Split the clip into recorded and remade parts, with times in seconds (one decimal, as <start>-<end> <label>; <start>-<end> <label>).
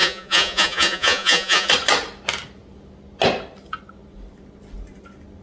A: 0.0-1.7 remade; 1.7-5.4 recorded